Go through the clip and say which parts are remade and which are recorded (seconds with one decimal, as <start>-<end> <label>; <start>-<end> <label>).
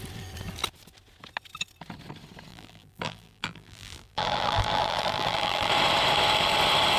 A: 0.0-2.5 recorded; 2.5-5.7 remade; 5.7-7.0 recorded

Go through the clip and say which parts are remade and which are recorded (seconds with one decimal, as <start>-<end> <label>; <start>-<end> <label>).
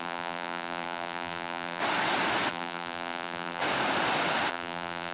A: 0.0-1.8 remade; 1.8-2.5 recorded; 2.5-3.6 remade; 3.6-4.5 recorded; 4.5-5.1 remade